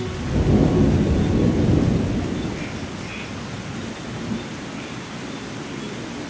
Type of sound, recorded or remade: recorded